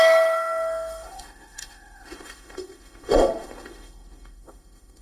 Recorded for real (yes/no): no